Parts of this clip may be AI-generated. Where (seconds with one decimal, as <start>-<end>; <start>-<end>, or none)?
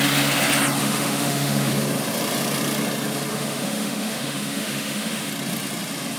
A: 0.8-1.7; 3.3-5.3